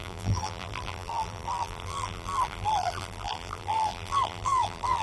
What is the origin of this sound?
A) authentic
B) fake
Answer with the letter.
B